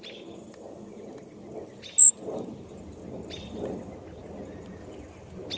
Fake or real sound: real